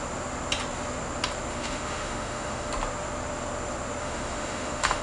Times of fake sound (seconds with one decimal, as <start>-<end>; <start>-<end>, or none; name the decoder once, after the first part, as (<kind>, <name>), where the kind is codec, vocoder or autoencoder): 1.5-2.7 (autoencoder, DAC-VAE); 4.0-5.0

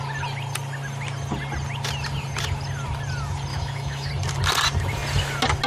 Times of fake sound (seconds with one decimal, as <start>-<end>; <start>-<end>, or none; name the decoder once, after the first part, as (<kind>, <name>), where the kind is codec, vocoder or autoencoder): 3.5-4.1 (autoencoder, DAC-VAE)

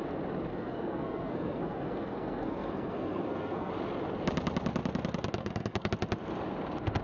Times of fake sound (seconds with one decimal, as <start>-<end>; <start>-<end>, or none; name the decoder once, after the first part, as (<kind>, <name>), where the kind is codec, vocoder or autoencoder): 0.5-3.7 (codec, SNAC); 5.4-5.9